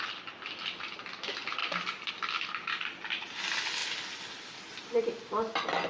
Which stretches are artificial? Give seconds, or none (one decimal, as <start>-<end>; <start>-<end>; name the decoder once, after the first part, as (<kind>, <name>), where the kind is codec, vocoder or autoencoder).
none